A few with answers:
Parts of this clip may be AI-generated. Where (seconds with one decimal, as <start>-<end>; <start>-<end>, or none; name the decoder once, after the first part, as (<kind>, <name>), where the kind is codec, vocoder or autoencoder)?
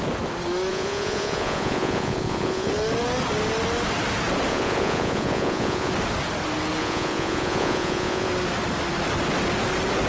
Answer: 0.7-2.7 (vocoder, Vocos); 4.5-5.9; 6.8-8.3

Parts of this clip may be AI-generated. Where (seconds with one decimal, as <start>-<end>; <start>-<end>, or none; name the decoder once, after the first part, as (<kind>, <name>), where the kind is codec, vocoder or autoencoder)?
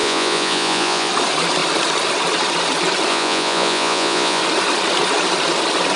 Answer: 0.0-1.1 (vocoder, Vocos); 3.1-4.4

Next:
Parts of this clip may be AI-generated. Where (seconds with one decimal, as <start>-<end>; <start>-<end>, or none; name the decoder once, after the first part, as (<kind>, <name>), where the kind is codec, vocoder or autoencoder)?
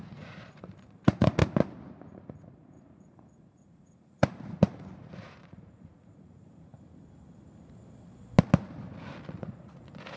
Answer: 0.0-1.4 (vocoder, Vocos); 2.1-6.7; 9.4-10.2